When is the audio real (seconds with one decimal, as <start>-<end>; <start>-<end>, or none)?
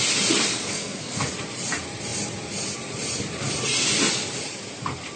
0.0-0.5; 1.3-5.2